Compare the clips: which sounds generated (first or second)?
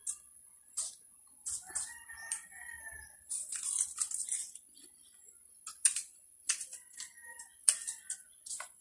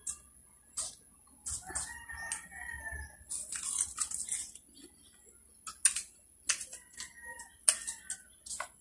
first